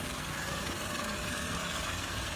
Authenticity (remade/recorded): remade